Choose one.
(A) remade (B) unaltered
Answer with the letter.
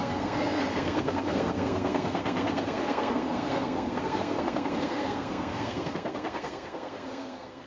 A